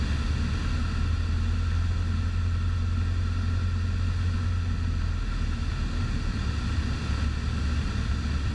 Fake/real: real